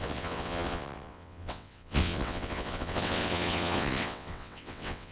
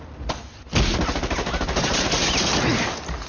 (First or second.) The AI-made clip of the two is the first